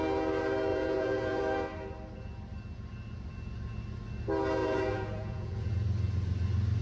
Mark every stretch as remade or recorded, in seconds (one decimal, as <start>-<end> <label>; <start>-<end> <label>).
0.0-0.7 recorded; 0.7-1.4 remade; 1.4-4.6 recorded; 4.6-5.7 remade; 5.7-6.8 recorded